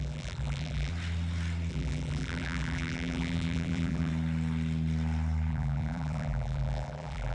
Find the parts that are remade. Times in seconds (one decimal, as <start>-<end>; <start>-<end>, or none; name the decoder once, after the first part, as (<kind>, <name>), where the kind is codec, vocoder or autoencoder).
0.0-0.9 (vocoder, BigVGAN v2); 1.7-4.1; 5.5-7.3